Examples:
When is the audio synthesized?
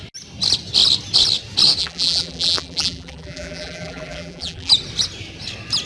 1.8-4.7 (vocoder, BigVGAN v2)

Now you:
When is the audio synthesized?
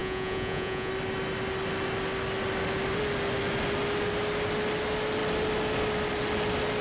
0.0-0.9 (vocoder, Vocos)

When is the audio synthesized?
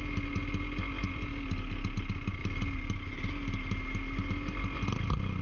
none